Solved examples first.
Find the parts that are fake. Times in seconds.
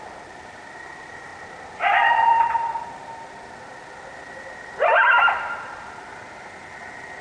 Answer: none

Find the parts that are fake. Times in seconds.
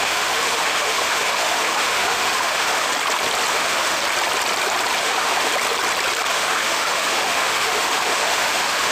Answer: 0.0-2.9 (autoencoder, DAC-VAE); 3.5-4.0; 5.0-5.5; 6.3-8.9